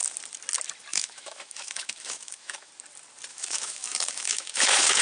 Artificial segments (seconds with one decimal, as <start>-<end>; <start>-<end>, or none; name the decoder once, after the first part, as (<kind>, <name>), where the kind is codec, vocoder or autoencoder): 0.9-2.7 (autoencoder, DAC-VAE); 3.3-5.0